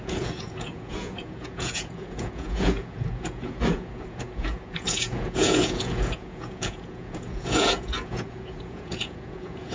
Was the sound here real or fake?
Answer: fake